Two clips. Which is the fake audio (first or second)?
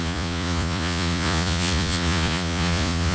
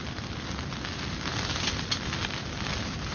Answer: first